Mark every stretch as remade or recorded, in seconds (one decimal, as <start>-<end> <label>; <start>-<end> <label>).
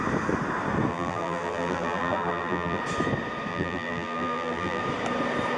0.0-0.9 recorded; 0.9-2.8 remade; 2.8-3.5 recorded; 3.5-4.8 remade; 4.8-5.6 recorded